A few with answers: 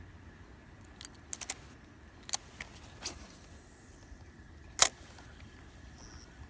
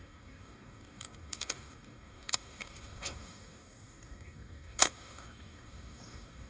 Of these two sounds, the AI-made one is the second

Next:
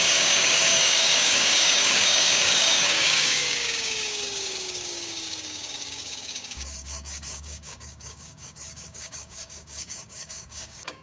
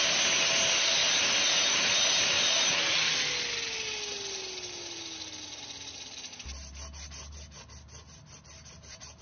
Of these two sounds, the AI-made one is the first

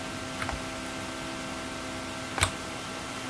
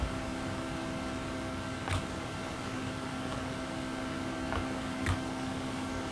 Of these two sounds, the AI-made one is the second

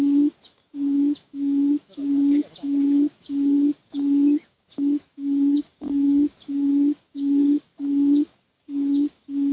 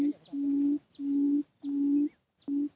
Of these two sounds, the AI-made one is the first